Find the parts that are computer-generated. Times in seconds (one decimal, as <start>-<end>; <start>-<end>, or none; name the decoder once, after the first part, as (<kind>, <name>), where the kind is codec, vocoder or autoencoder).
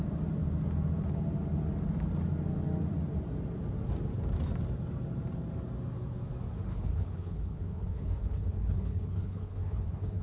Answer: 6.7-10.2 (codec, HILCodec)